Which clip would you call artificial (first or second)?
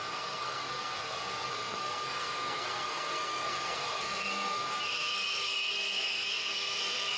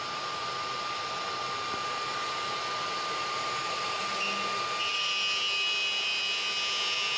first